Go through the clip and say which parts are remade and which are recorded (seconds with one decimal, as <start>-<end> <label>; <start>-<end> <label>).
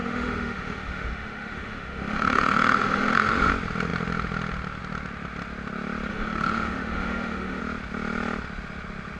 0.0-3.5 remade; 3.5-6.1 recorded; 6.1-7.6 remade; 7.6-9.2 recorded